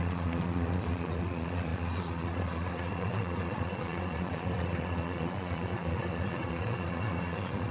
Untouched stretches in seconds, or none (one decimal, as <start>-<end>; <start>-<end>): none